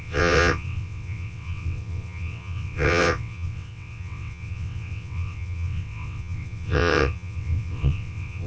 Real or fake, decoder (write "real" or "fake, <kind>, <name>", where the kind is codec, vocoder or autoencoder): fake, vocoder, WaveNeXt